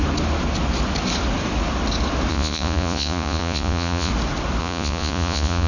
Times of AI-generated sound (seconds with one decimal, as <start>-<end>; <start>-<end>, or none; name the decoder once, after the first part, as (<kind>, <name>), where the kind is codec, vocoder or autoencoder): 2.3-4.1 (vocoder, Vocos); 4.6-5.7